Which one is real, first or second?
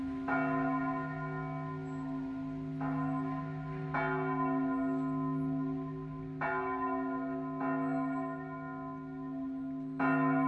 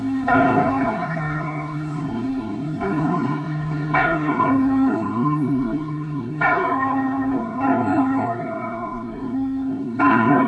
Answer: first